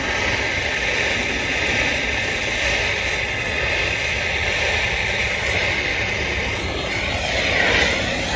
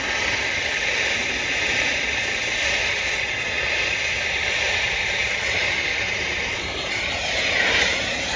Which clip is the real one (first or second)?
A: first